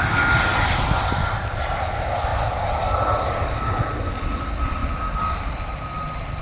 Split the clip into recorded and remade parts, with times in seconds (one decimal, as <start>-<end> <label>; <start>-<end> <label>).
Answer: 0.0-6.4 recorded